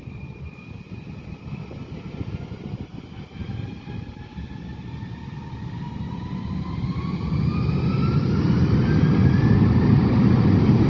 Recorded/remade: remade